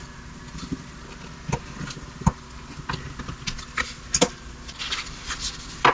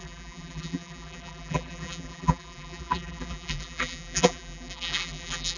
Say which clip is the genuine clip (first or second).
first